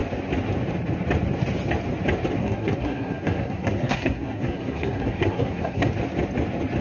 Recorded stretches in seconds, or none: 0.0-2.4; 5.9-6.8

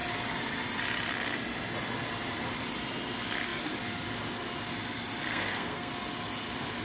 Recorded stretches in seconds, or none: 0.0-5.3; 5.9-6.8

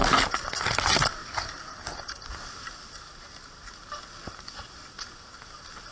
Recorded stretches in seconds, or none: 0.0-5.9

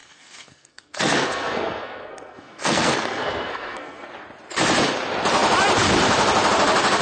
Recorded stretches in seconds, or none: 4.1-7.0

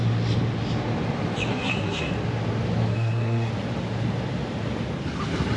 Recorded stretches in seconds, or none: 0.0-1.5; 2.1-2.9; 3.5-5.6

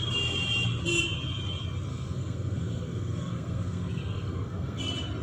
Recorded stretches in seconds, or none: 0.0-1.9; 4.8-5.2